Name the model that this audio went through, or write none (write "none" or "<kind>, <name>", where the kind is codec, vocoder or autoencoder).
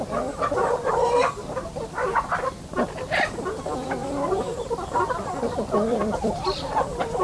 vocoder, BigVGAN v2